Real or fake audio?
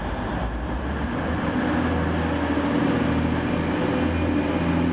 real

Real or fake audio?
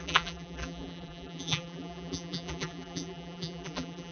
fake